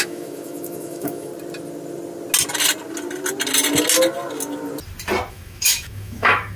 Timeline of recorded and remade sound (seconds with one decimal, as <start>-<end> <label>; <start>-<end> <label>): 0.0-1.3 remade; 1.3-5.3 recorded; 5.3-6.6 remade